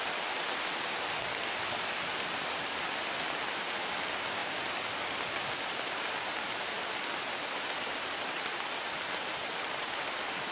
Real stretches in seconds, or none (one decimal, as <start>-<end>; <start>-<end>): 0.0-10.5